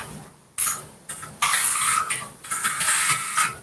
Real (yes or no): yes